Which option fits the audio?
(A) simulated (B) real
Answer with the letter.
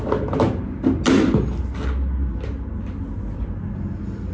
B